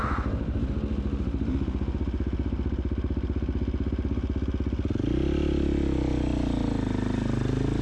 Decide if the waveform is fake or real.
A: real